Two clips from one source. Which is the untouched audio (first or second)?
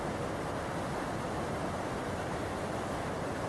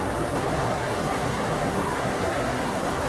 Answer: first